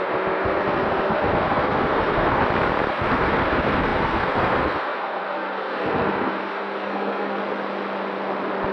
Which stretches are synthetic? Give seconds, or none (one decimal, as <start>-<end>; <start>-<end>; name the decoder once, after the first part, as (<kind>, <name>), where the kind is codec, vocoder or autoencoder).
0.0-2.4 (codec, SNAC); 2.9-7.4